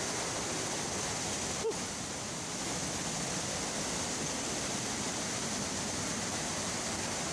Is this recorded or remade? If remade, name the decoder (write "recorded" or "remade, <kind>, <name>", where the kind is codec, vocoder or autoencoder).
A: recorded